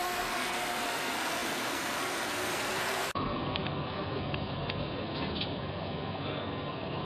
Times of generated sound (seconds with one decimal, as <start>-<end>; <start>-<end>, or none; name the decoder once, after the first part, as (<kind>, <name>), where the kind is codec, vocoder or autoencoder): 0.0-7.0 (codec, SNAC)